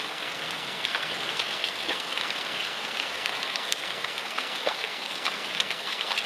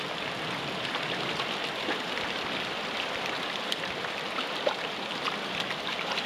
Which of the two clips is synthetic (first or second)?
first